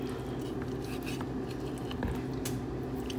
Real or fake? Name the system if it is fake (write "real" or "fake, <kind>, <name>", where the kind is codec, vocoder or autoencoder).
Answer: real